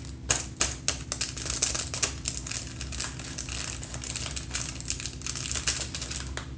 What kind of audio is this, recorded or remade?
recorded